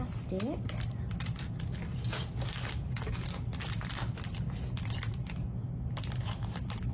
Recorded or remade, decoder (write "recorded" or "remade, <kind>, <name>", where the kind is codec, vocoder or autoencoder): recorded